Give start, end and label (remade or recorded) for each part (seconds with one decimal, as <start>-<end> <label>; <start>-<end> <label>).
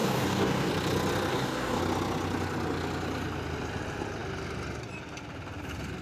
0.0-0.7 remade; 0.7-1.3 recorded; 1.3-1.8 remade; 1.8-6.0 recorded